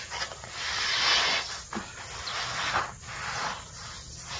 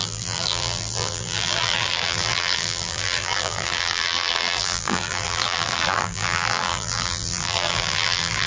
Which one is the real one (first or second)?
first